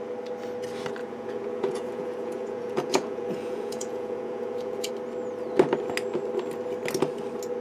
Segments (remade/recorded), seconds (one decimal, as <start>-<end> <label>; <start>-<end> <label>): 0.0-1.0 recorded; 1.0-4.9 remade; 4.9-7.6 recorded